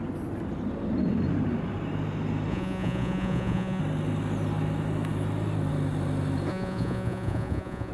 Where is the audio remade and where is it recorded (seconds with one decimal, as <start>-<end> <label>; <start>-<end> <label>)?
0.0-2.5 recorded; 2.5-3.8 remade; 3.8-6.5 recorded; 6.5-7.9 remade